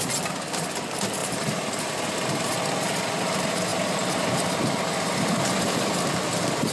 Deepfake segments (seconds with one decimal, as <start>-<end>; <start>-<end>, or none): none